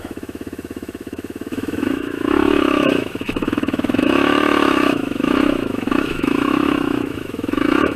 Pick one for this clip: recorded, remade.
remade